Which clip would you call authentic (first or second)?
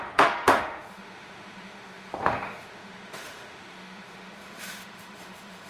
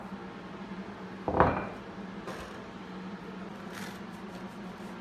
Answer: second